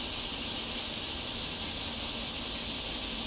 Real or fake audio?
real